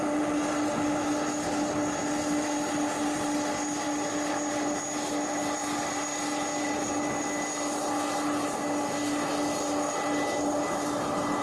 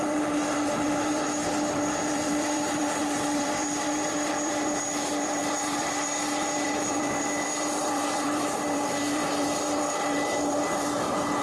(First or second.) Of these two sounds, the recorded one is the first